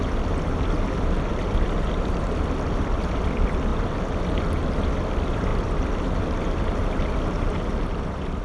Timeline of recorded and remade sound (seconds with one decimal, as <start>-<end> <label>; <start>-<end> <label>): 0.0-8.4 recorded